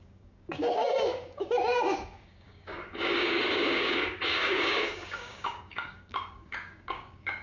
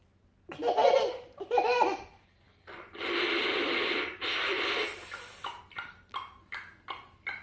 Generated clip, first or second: first